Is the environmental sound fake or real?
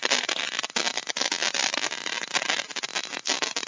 real